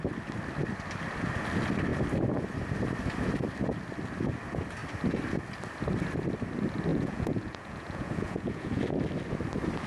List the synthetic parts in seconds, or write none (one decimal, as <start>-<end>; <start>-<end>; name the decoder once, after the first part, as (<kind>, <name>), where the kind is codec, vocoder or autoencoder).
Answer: 6.9-8.8 (vocoder, Vocos)